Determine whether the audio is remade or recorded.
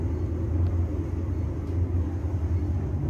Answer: recorded